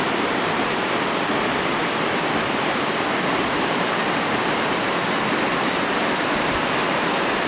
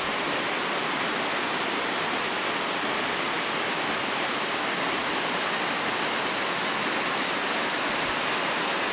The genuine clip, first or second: second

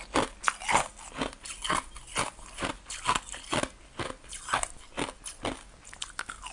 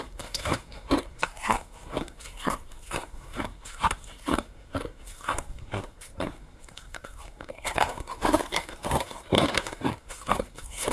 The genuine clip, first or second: first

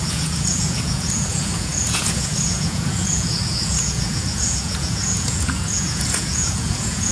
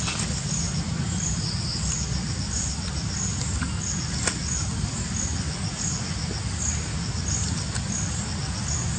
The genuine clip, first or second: second